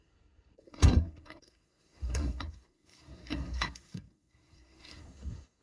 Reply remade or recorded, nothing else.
remade